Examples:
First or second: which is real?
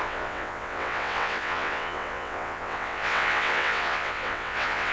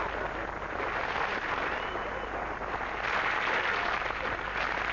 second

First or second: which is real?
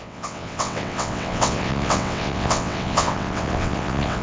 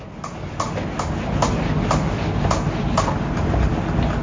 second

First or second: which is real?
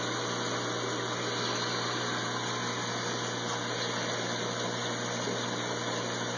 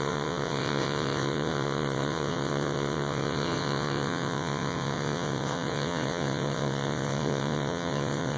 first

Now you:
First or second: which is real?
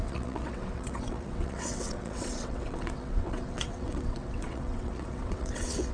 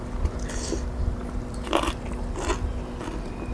second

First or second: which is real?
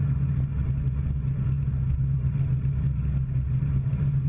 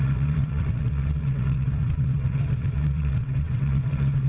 first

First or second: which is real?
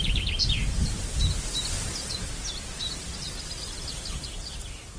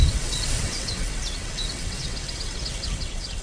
first